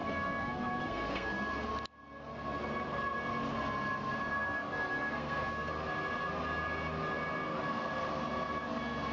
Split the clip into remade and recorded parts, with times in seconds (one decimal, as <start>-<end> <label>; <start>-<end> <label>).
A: 0.0-1.3 remade; 1.3-4.3 recorded; 4.3-5.7 remade; 5.7-9.1 recorded